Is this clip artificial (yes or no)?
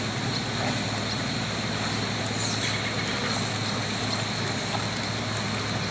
no